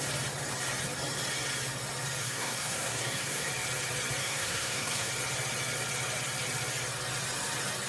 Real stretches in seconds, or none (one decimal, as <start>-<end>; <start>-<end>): 0.0-2.2; 3.5-4.2; 5.1-7.9